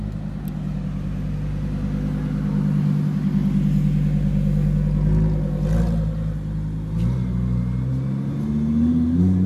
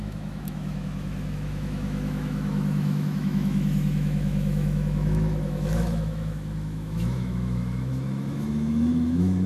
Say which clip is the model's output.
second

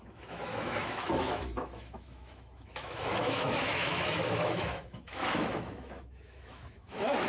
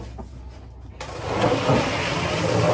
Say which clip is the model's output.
first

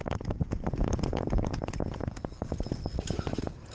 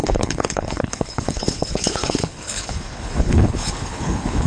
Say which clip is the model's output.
second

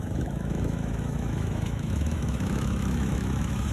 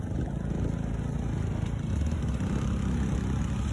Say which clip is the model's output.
first